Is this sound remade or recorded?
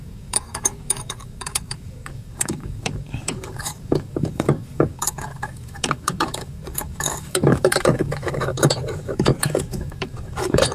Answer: remade